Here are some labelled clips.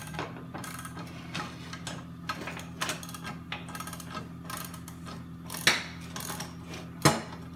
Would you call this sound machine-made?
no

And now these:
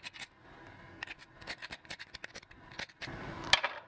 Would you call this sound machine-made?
no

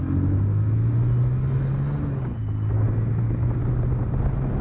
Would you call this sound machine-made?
no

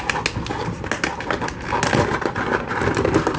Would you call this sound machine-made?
no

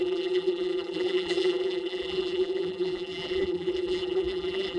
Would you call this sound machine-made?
yes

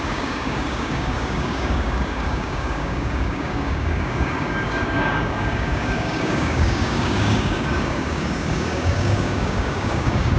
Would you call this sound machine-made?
yes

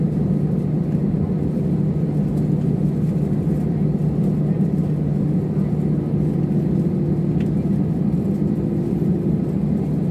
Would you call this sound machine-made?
no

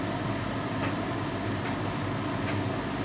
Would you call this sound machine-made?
no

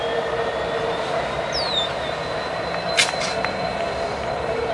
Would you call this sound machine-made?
no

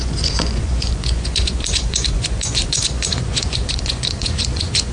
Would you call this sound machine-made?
yes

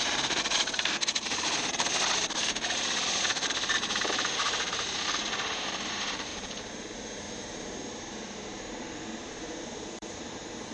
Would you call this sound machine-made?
yes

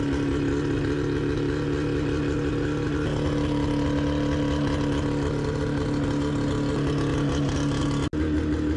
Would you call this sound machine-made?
no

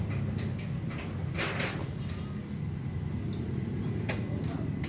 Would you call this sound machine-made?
no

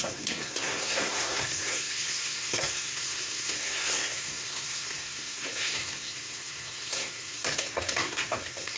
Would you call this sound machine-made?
yes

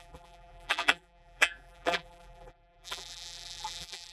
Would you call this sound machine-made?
yes